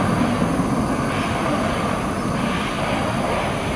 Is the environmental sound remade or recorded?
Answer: recorded